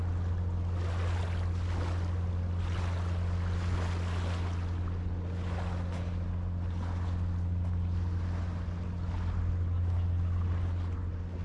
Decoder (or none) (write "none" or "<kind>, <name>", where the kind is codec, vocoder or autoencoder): none